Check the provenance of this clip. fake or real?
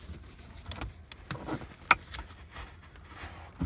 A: real